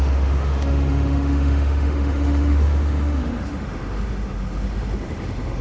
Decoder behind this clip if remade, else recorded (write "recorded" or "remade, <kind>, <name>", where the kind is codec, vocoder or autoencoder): remade, autoencoder, DAC-VAE